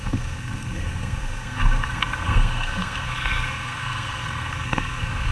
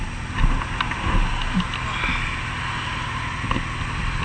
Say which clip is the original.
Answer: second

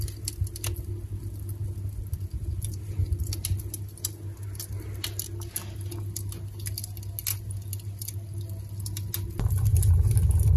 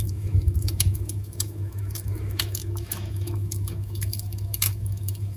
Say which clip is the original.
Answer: first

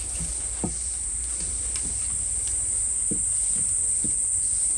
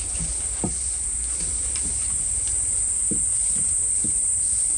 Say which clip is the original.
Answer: first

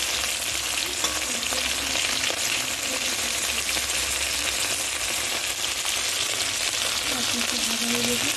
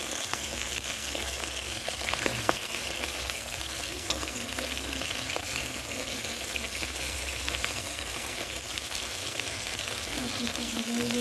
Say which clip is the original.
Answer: first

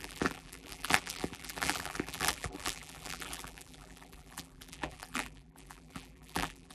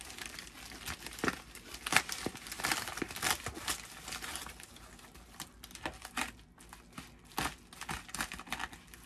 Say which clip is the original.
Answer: second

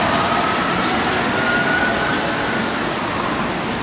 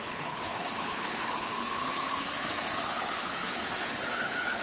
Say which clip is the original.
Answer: first